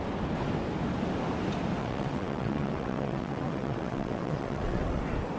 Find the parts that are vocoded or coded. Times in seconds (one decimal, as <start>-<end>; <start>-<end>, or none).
1.8-5.0